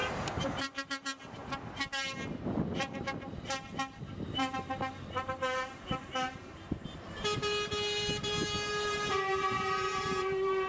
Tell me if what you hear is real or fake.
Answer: fake